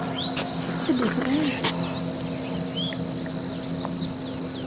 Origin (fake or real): real